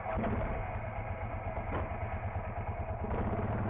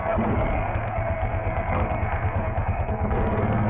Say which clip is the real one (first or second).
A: first